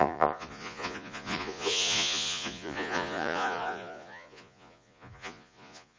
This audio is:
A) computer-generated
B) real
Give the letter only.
A